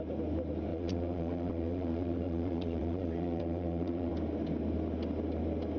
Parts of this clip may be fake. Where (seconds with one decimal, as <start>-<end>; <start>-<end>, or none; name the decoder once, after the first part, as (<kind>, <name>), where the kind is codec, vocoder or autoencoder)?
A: 0.7-4.1 (vocoder, Vocos)